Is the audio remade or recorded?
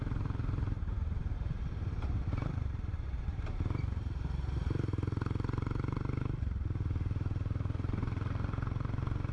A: remade